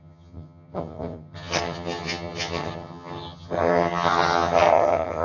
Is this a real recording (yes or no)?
no